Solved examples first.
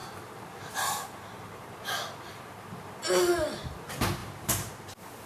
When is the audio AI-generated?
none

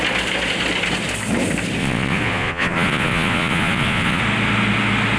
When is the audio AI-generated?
1.8-4.2

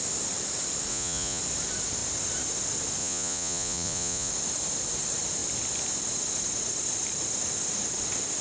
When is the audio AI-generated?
0.9-1.4; 3.0-4.3

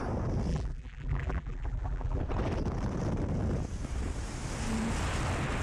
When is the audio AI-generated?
0.5-2.2

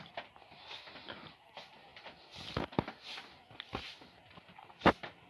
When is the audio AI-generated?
none